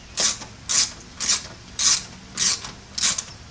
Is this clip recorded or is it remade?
recorded